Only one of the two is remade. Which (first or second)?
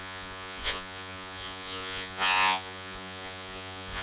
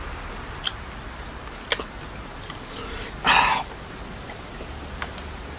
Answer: first